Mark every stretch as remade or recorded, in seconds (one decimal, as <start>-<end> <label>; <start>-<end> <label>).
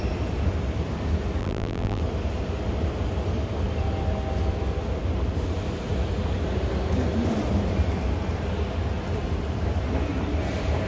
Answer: 0.0-1.4 recorded; 1.4-2.0 remade; 2.0-10.9 recorded